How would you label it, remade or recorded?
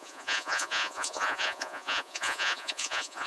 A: remade